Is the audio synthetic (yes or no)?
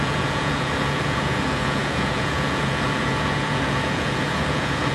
yes